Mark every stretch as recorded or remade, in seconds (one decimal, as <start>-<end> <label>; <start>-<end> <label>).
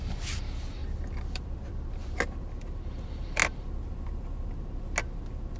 0.0-0.8 recorded; 0.8-2.0 remade; 2.0-5.6 recorded